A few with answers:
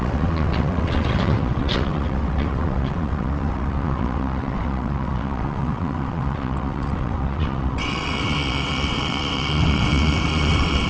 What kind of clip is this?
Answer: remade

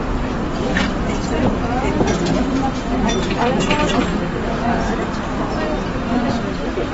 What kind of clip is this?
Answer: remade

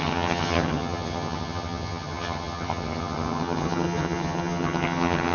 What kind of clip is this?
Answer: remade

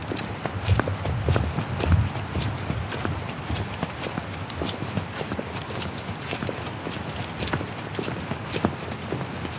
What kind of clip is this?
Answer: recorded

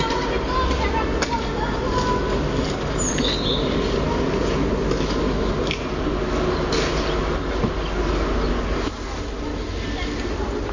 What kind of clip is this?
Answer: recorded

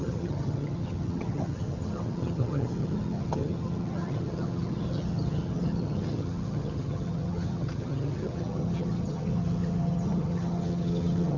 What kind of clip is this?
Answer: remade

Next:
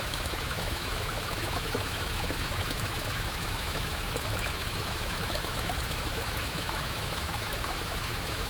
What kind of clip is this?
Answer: remade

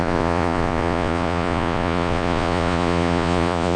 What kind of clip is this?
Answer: remade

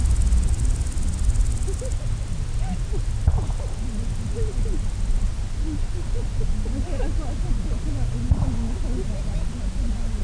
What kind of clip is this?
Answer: recorded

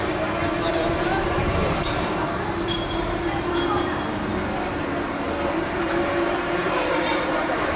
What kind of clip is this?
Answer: remade